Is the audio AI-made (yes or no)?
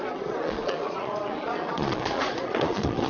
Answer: yes